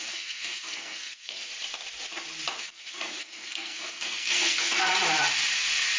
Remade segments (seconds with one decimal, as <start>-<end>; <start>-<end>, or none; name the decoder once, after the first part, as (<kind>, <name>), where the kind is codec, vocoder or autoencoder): 0.0-1.5 (codec, SNAC); 2.6-4.9